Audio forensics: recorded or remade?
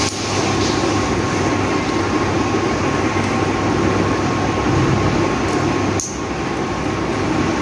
recorded